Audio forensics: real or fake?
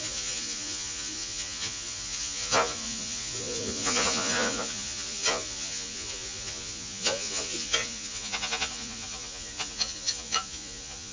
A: fake